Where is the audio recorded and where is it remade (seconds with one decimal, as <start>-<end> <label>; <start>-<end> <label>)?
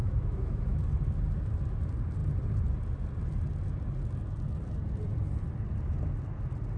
0.0-0.8 remade; 0.8-6.8 recorded